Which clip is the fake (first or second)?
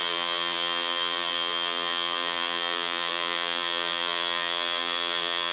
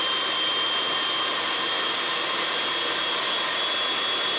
first